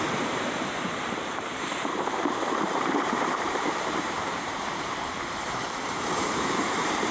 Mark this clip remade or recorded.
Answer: remade